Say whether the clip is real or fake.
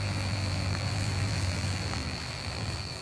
fake